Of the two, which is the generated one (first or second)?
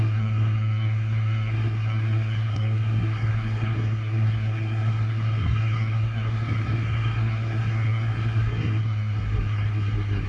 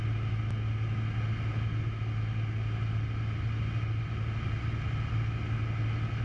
first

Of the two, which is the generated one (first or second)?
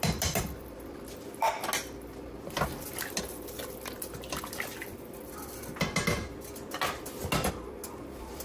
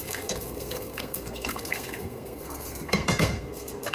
second